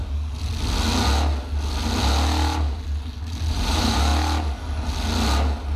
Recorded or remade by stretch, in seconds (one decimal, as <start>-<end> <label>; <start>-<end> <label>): 0.0-3.5 recorded; 3.5-4.1 remade; 4.1-5.8 recorded